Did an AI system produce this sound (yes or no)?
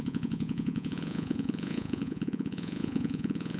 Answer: yes